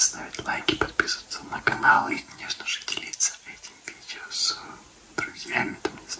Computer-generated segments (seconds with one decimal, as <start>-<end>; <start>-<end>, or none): 1.7-2.4; 5.3-5.8